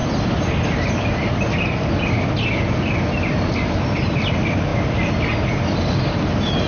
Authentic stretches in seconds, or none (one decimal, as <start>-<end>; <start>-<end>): 0.0-6.7